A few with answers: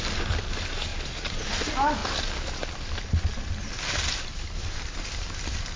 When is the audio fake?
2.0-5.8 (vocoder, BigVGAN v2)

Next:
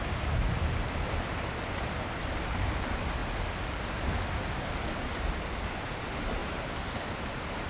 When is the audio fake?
6.4-7.7 (vocoder, BigVGAN v2)

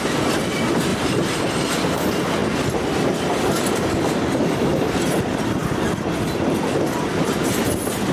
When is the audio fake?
0.9-1.4 (vocoder, BigVGAN v2)

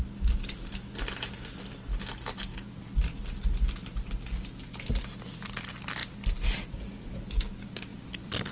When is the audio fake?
6.0-7.2 (vocoder, BigVGAN v2); 7.9-8.5

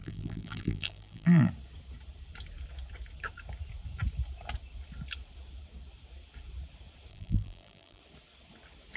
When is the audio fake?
0.0-1.5 (vocoder, BigVGAN v2); 7.1-8.0

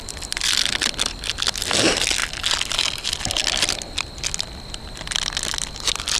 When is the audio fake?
none